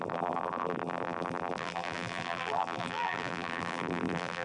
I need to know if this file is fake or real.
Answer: fake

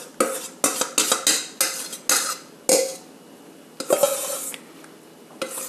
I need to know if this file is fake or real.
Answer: real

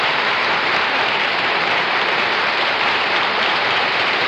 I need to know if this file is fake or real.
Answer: fake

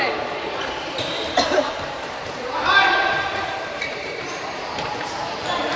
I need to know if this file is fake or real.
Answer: fake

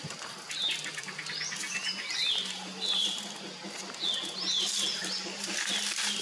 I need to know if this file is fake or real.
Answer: real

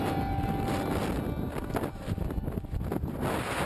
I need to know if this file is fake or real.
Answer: real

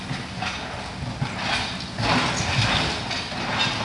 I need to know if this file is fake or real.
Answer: real